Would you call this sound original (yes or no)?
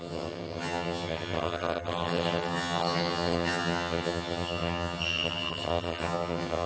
no